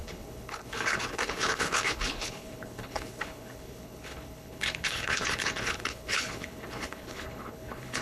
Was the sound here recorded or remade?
remade